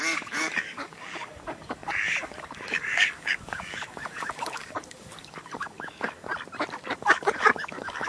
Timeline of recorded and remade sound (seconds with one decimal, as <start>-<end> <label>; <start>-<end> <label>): 0.0-6.3 remade; 6.3-6.9 recorded; 6.9-8.1 remade